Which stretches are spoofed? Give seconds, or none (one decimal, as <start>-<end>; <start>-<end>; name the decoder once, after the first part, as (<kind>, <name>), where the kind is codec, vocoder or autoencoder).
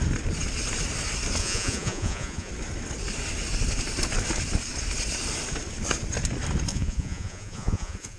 1.4-2.5 (vocoder, Vocos); 6.7-8.2